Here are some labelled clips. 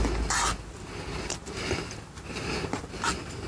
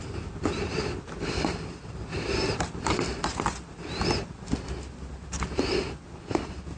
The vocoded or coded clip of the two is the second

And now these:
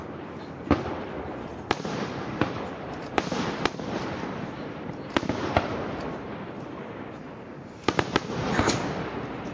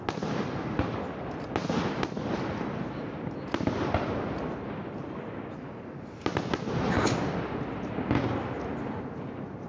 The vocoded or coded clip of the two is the first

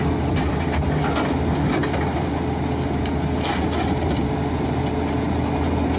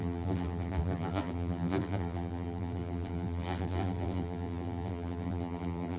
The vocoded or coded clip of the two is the second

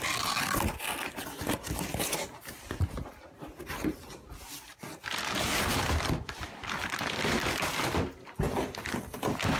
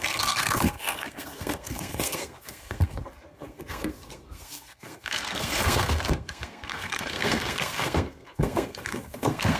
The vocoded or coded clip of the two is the second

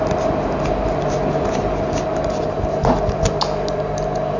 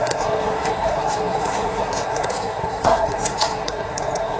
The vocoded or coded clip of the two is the second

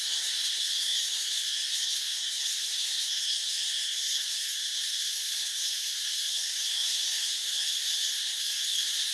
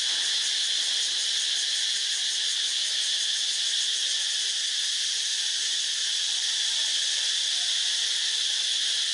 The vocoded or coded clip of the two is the first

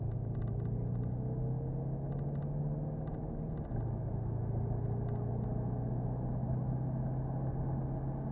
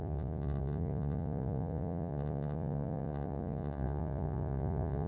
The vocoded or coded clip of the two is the second